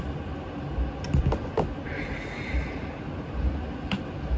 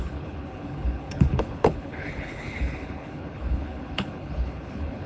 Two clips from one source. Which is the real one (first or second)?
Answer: first